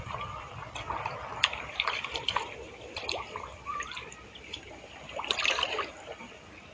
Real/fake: fake